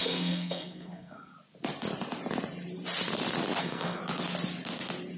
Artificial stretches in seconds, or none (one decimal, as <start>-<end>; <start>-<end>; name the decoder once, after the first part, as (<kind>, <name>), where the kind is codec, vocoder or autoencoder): 0.0-1.3 (codec, SNAC); 3.6-4.0